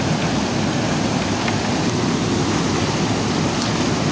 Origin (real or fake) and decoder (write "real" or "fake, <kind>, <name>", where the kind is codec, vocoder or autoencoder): real